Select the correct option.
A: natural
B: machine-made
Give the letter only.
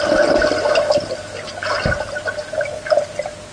A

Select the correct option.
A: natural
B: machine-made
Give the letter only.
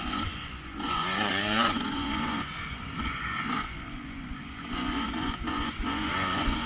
B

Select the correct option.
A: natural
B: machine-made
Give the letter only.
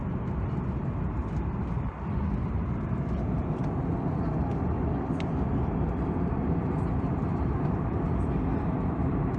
A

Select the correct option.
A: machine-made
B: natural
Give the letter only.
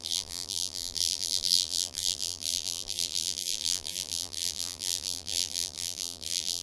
A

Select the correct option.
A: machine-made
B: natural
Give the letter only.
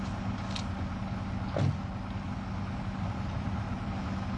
B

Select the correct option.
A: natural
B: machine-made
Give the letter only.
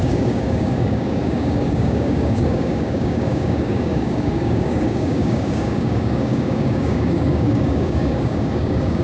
B